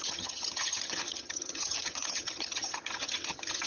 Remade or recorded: remade